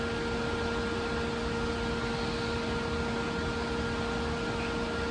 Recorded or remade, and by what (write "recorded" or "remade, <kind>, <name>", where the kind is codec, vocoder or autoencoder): recorded